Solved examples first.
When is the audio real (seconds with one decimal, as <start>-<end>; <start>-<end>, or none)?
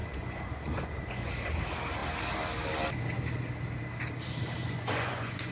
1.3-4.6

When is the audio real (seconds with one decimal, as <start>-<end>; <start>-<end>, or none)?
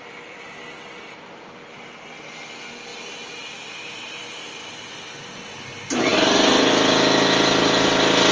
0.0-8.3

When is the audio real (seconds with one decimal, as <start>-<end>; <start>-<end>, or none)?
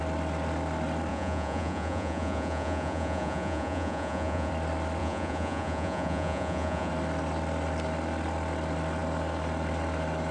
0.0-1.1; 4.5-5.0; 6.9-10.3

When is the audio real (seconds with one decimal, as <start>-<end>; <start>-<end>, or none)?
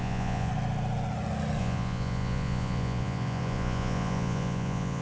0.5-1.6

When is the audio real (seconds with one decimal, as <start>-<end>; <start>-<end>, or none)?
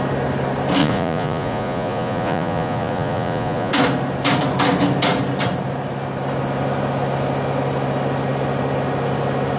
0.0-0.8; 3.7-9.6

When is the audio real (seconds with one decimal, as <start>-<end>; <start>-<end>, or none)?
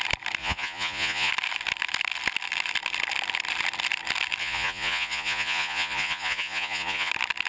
0.0-0.4; 1.3-4.4; 7.1-7.5